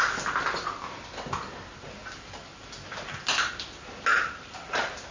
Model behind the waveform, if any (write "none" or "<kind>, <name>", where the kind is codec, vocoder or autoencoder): none